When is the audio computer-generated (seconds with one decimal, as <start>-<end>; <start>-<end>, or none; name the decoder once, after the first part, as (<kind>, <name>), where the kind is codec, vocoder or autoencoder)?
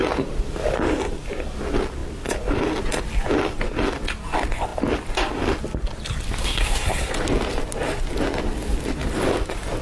6.4-7.1 (codec, SNAC)